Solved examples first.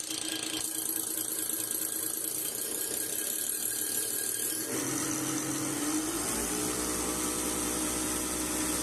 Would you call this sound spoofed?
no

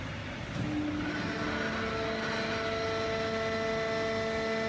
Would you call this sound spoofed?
no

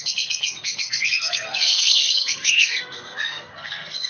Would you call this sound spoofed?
yes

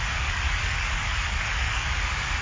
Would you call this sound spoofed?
yes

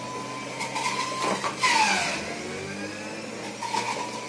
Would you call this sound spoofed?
no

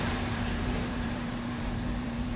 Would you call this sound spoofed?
yes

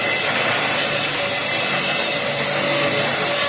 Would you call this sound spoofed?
no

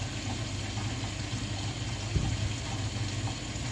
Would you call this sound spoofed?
no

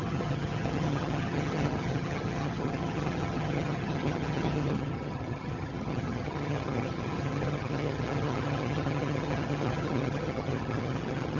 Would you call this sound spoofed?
yes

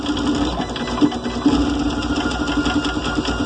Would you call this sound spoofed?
no